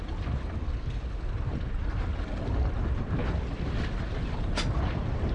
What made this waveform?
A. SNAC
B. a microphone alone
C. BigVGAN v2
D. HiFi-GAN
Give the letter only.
B